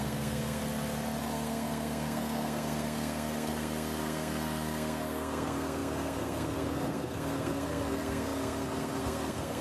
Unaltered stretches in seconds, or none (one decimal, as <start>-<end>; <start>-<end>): 0.6-1.2